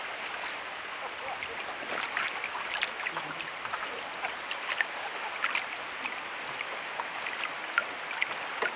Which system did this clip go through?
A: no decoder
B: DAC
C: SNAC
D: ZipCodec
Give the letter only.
A